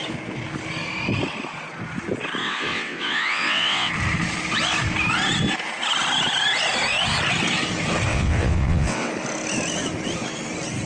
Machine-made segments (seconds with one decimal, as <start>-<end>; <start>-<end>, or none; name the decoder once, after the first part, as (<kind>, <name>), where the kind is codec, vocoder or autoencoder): 2.4-3.9 (vocoder, WaveNeXt); 8.1-9.1